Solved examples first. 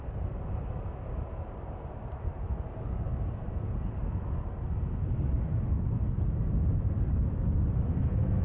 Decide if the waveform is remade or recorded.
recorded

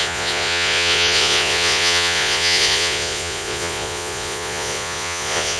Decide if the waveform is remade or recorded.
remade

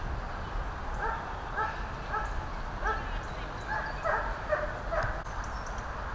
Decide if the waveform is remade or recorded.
recorded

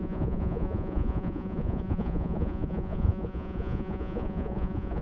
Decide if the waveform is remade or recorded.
remade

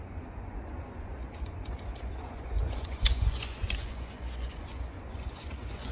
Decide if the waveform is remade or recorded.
remade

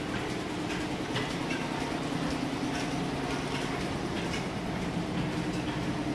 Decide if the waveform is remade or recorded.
recorded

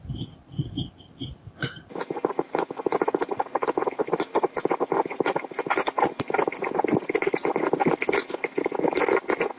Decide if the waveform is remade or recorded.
recorded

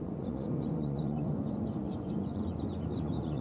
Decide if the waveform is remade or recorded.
remade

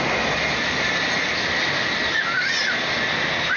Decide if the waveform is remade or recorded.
recorded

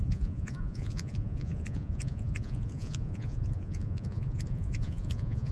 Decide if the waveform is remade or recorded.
remade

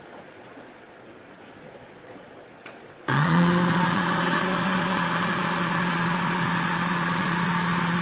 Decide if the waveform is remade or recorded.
remade